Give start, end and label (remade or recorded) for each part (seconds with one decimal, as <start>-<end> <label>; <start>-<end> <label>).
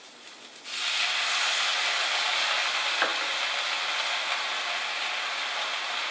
0.0-6.1 recorded